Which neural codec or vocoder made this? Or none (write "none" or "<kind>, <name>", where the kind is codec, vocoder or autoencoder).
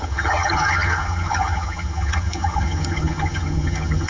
vocoder, HiFi-GAN